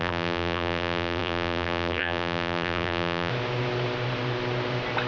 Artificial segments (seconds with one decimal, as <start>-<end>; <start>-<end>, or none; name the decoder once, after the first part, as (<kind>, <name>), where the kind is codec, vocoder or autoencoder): 0.0-3.3 (vocoder, BigVGAN v2)